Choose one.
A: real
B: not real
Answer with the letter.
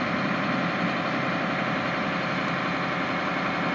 A